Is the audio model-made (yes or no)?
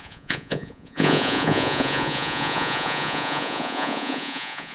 yes